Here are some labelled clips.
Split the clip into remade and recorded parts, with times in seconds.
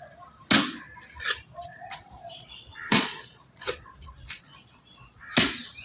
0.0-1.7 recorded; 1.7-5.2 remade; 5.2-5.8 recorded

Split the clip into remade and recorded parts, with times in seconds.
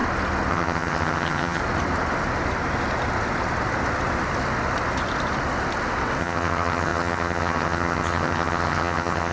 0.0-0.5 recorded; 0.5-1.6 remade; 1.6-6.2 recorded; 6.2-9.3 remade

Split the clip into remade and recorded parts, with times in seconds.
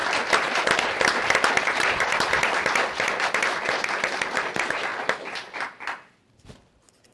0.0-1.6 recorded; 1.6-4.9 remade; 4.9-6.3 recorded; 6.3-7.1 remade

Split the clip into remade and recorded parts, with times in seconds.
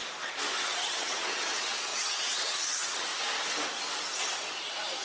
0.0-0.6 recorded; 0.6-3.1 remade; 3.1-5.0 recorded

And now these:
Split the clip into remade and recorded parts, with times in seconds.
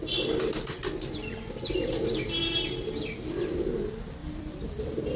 0.0-4.2 recorded; 4.2-5.2 remade